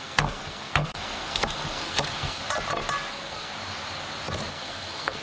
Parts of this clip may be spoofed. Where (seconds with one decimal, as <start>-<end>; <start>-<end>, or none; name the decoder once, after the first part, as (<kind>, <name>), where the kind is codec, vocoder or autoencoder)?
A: 0.0-2.4 (codec, SNAC); 3.1-3.5; 4.5-5.2